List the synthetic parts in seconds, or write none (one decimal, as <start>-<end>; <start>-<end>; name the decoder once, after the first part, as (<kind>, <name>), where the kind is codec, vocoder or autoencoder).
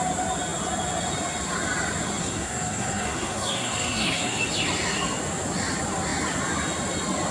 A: 2.2-4.4 (codec, SNAC)